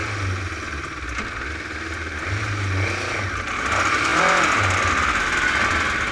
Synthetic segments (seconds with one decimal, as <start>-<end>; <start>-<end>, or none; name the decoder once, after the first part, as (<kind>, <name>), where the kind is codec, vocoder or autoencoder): none